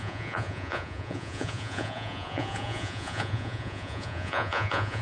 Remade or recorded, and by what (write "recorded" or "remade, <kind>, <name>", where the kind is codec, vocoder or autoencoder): remade, vocoder, Vocos